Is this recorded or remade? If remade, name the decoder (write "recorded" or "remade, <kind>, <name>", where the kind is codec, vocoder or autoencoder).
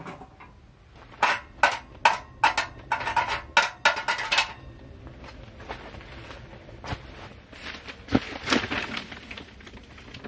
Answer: recorded